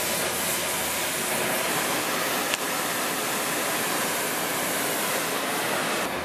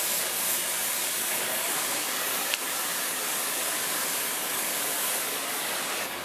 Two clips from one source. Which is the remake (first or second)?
second